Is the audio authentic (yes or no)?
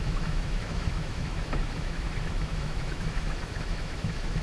no